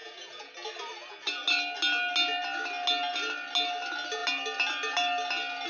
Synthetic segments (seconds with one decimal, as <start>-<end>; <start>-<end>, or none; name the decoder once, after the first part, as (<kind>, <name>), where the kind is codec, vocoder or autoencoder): 0.0-0.5 (vocoder, Vocos)